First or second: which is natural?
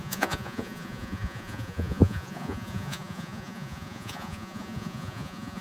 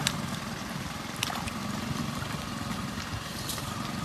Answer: second